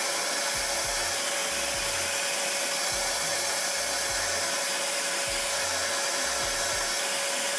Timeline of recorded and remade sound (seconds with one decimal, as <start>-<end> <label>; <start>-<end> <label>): 0.0-7.6 recorded